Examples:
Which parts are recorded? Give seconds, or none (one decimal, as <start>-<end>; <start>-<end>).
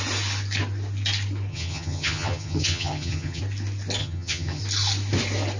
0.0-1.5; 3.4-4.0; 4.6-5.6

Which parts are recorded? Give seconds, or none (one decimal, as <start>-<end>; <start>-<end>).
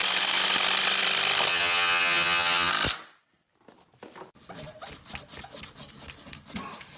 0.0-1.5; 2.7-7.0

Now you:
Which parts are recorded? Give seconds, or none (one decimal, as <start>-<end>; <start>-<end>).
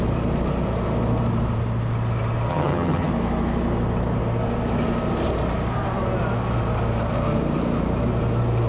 0.0-2.5; 3.1-8.7